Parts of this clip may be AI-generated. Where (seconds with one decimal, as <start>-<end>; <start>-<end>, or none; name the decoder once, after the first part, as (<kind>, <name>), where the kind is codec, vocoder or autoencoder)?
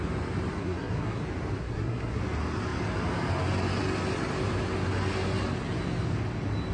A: 0.6-1.2 (codec, SNAC); 1.6-2.2